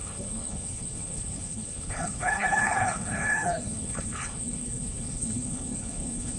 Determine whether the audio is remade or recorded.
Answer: remade